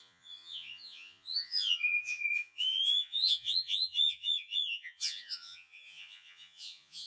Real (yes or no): no